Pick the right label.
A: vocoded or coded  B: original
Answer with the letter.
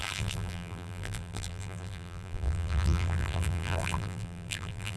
A